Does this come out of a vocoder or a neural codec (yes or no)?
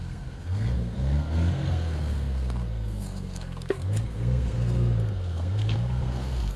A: yes